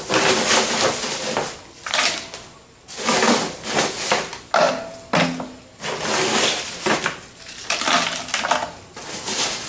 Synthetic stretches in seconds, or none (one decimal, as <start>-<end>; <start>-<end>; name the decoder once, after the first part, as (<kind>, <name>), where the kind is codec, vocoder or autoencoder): none